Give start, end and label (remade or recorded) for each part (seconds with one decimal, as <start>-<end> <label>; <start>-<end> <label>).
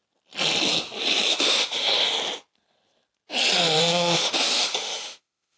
0.0-1.3 recorded; 1.3-2.1 remade; 2.1-3.8 recorded; 3.8-5.6 remade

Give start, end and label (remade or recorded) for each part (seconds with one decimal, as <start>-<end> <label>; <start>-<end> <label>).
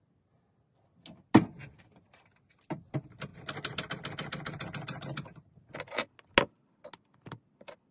0.0-7.9 recorded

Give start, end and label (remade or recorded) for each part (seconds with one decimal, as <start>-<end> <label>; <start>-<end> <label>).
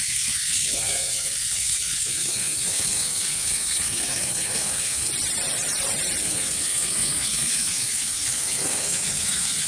0.0-5.1 remade; 5.1-6.2 recorded; 6.2-9.7 remade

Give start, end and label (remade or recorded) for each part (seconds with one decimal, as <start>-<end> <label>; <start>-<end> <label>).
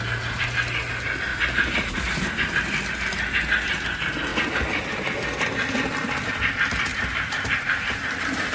0.0-1.3 recorded; 1.3-2.9 remade; 2.9-6.9 recorded; 6.9-8.5 remade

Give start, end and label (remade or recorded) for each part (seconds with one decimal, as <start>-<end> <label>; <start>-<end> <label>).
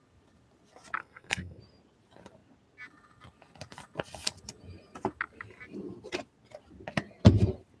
0.0-1.0 recorded; 1.0-1.6 remade; 1.6-7.8 recorded